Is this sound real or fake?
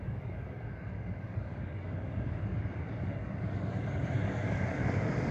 fake